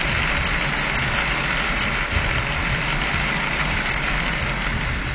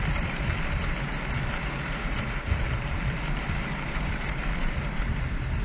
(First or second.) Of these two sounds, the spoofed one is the second